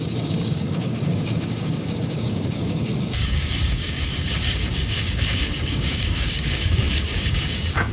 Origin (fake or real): fake